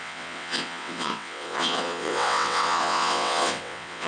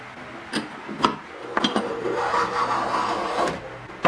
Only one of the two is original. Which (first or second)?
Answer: second